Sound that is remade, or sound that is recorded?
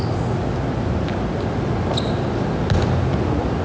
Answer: recorded